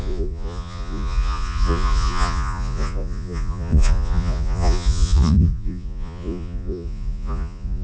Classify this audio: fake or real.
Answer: fake